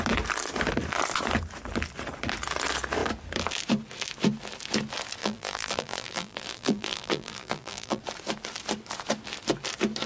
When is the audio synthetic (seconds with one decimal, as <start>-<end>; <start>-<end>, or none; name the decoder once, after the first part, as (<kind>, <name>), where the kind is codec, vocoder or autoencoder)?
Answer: 5.2-8.0 (vocoder, BigVGAN v2)